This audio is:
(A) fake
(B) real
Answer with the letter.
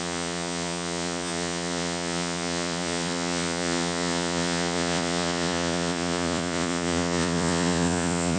A